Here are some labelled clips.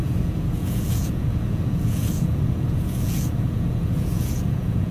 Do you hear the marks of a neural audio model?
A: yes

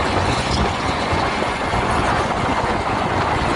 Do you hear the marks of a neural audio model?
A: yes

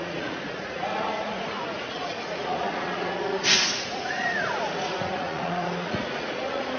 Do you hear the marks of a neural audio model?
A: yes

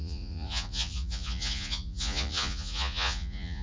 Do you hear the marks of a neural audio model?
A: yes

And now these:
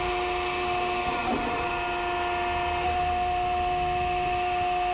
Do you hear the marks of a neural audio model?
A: no